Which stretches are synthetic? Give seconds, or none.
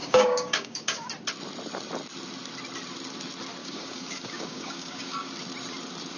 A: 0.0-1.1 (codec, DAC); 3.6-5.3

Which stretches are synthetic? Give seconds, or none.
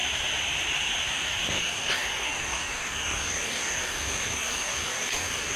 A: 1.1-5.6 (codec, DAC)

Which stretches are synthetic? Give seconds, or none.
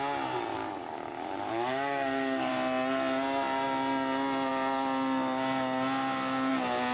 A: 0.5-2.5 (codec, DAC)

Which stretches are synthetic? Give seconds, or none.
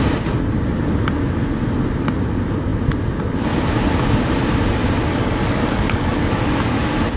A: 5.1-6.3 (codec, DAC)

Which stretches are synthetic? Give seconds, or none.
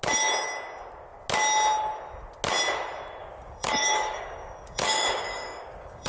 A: 3.2-6.1 (codec, DAC)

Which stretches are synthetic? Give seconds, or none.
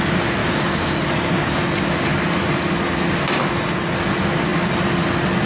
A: 0.4-1.6 (codec, DAC)